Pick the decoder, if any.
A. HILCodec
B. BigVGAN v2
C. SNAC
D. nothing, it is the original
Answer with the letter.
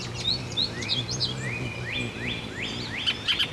D